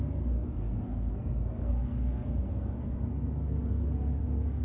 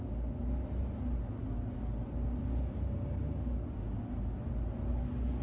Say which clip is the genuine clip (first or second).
second